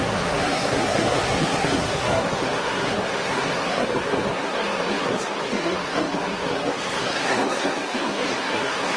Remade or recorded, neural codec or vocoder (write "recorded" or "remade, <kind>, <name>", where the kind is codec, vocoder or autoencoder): remade, codec, SNAC